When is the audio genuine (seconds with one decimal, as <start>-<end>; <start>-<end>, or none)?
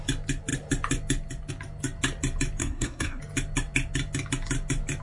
0.0-2.6; 3.2-5.0